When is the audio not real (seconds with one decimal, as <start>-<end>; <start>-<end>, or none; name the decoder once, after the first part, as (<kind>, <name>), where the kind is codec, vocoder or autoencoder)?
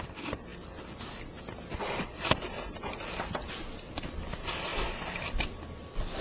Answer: none